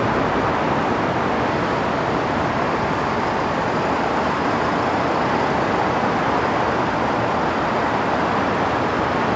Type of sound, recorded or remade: recorded